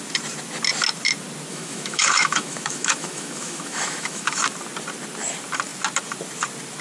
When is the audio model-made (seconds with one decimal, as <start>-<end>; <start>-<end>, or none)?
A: 1.5-4.4